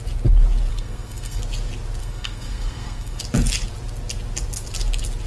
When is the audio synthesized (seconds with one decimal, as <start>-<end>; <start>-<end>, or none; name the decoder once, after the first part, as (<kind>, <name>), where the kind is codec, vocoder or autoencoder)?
0.7-1.4 (codec, SNAC); 2.0-3.2